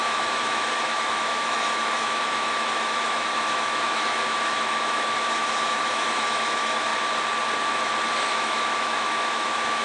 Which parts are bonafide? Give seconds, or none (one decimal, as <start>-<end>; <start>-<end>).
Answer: 6.9-8.3